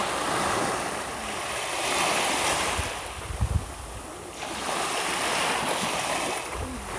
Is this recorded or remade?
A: recorded